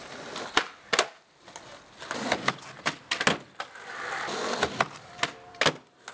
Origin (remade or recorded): recorded